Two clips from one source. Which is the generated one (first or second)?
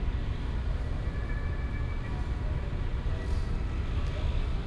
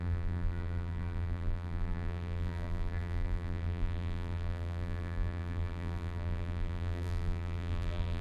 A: second